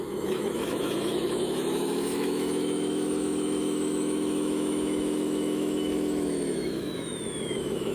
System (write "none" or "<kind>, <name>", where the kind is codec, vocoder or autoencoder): autoencoder, DAC-VAE